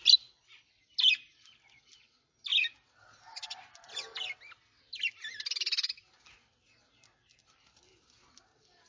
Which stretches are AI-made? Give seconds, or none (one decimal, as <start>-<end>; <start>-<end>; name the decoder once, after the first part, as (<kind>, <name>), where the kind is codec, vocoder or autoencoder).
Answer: none